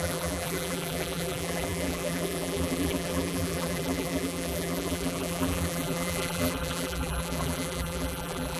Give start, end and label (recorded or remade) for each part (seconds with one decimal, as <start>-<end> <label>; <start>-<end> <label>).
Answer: 0.0-8.6 remade